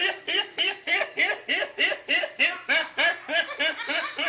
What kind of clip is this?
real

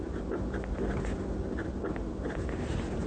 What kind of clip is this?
real